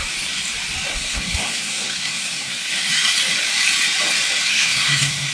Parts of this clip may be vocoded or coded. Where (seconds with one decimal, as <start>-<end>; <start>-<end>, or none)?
0.9-2.9; 4.5-5.3